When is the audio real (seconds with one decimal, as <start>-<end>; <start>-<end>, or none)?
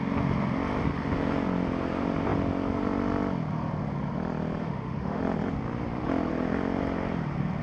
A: 0.0-4.6; 5.2-7.6